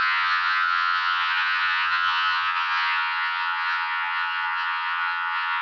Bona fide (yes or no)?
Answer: no